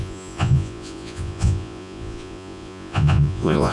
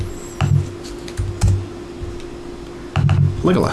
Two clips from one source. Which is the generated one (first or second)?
first